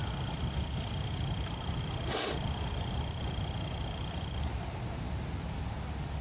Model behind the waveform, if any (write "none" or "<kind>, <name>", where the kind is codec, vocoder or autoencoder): none